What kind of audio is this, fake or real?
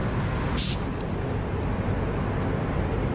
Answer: real